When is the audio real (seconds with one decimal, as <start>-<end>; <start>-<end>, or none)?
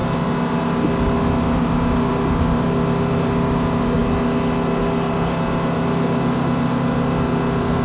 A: 0.0-7.8